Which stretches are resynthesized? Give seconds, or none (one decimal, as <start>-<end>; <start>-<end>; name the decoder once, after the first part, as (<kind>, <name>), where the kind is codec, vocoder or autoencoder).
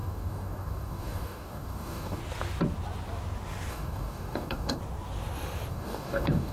0.0-2.2 (codec, DAC); 3.7-4.8; 5.7-6.5